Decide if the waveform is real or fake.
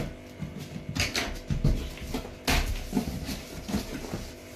real